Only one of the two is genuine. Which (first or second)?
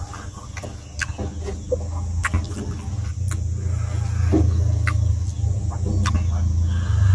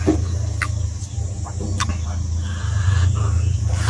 first